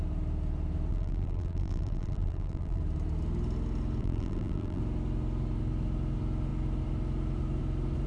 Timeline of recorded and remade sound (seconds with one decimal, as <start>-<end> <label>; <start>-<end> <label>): 0.0-0.9 recorded; 0.9-2.8 remade; 2.8-4.0 recorded; 4.0-4.8 remade; 4.8-8.1 recorded